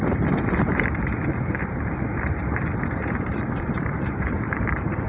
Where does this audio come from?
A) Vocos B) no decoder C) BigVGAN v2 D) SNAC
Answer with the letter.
C